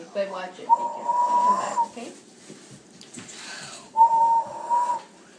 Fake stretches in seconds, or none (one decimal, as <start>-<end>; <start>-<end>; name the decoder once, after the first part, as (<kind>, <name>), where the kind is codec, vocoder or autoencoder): none